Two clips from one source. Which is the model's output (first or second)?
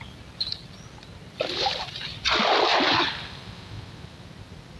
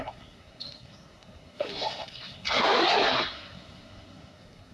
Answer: second